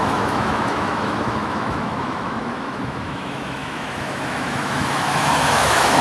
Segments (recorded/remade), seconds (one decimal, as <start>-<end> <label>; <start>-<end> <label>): 0.0-6.0 remade